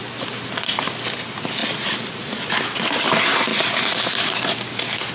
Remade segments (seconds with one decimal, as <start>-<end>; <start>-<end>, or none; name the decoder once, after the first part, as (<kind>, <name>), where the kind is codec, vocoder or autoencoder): none